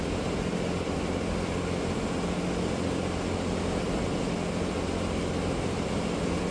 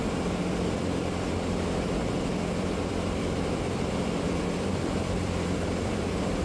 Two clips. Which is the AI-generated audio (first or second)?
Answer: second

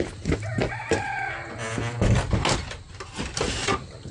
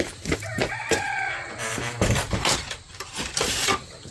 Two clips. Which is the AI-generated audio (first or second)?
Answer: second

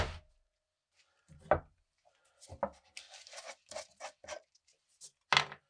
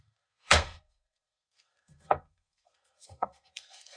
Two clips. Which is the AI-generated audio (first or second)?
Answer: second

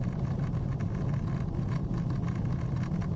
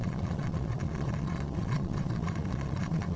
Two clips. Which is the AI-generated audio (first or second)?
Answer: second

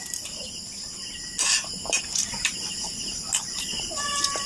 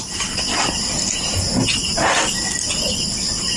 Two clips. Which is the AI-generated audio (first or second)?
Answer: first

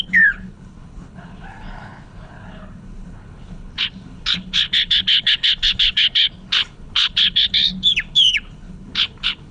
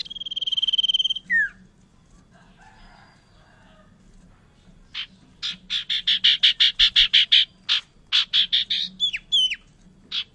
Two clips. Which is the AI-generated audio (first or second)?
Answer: first